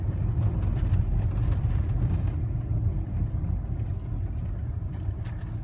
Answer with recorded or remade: recorded